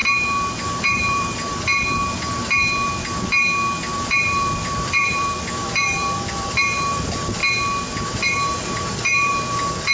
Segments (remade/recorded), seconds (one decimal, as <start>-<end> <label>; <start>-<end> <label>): 0.0-0.8 recorded; 0.8-1.5 remade; 1.5-4.0 recorded; 4.0-7.4 remade; 7.4-8.1 recorded; 8.1-9.9 remade